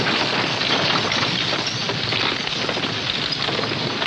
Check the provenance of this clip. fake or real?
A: real